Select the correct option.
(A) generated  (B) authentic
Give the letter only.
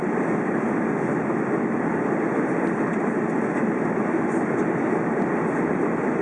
A